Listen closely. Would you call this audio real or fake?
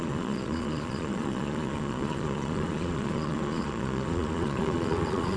fake